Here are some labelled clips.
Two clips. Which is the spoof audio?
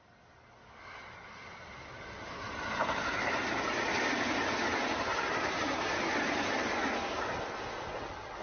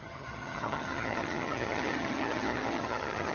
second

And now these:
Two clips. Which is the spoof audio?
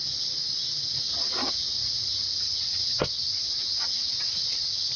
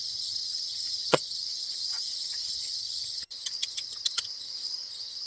second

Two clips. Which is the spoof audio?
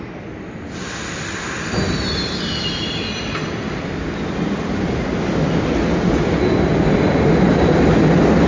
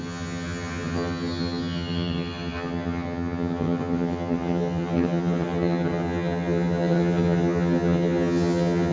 second